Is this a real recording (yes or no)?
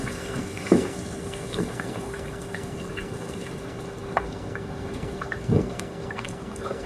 no